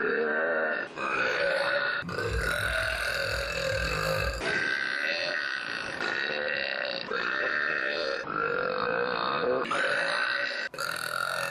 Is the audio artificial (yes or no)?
no